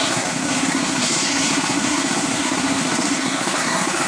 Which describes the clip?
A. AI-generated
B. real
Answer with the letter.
A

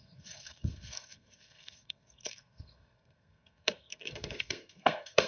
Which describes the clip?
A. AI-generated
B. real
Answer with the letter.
A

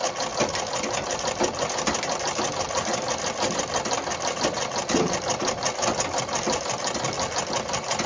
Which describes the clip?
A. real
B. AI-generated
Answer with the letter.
A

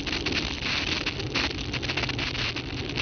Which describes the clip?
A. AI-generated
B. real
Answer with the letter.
B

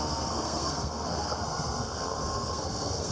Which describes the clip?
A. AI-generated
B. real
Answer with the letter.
A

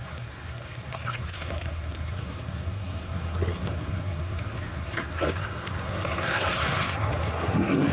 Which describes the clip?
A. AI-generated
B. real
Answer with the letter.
A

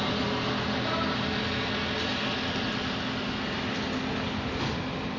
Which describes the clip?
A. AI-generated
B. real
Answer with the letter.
B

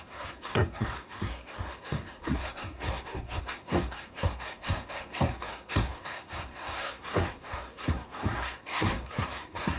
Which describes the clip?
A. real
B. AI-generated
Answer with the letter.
B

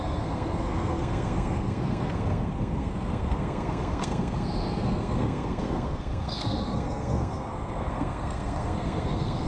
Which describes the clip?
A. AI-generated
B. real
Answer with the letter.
A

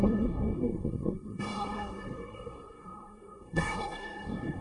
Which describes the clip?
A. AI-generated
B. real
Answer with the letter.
A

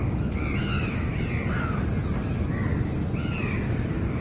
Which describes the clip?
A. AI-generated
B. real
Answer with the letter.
B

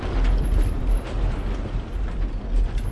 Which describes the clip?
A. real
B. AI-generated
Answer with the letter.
A